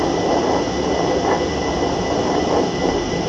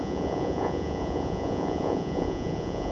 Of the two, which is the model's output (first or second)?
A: second